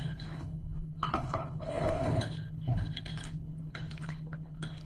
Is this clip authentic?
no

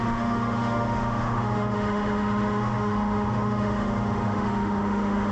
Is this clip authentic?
no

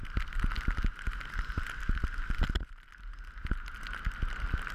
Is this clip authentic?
yes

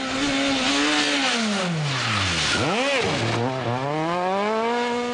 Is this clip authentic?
yes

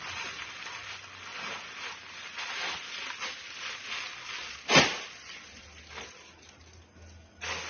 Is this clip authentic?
yes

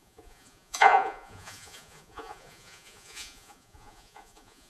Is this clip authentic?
no